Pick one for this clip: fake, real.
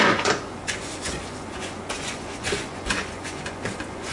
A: fake